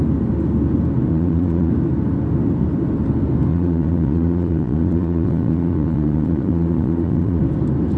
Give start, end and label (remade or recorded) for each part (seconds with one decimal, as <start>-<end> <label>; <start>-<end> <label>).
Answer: 0.0-1.1 recorded; 1.1-1.7 remade; 1.7-3.5 recorded; 3.5-7.4 remade; 7.4-8.0 recorded